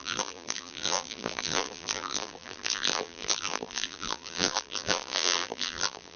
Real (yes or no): no